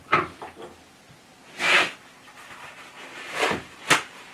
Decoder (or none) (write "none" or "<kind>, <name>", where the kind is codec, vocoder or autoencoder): none